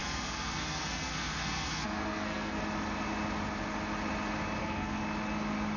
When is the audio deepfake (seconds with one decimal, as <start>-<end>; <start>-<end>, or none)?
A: 0.0-2.6; 4.6-5.0